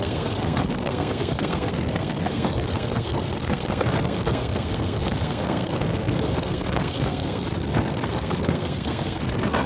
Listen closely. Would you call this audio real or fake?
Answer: fake